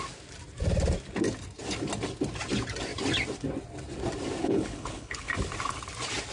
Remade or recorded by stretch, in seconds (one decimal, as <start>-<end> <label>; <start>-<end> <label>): 0.0-4.4 recorded; 4.4-5.3 remade; 5.3-6.3 recorded

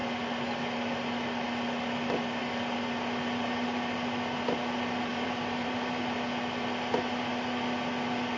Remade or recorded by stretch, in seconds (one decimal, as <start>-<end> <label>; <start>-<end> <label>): 0.0-5.1 recorded; 5.1-6.0 remade; 6.0-8.4 recorded

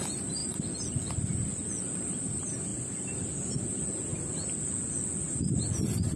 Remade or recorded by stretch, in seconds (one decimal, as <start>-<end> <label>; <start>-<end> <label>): 0.0-6.2 recorded

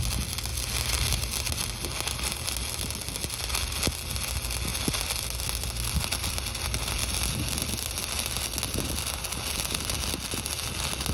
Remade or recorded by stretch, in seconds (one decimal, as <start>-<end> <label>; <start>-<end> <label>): 0.0-11.1 recorded

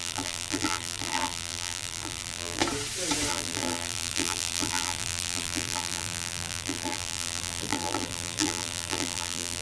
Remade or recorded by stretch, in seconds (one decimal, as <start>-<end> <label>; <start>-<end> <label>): 0.0-2.6 remade; 2.6-3.3 recorded; 3.3-9.6 remade

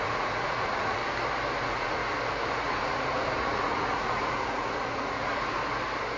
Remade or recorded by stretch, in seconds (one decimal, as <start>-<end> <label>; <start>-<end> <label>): 0.0-1.0 remade; 1.0-1.6 recorded; 1.6-2.0 remade; 2.0-2.5 recorded; 2.5-5.6 remade; 5.6-6.2 recorded

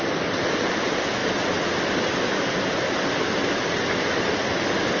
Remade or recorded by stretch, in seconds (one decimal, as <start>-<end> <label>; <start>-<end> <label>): 0.0-5.0 recorded